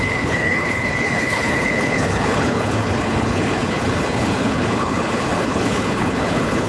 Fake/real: fake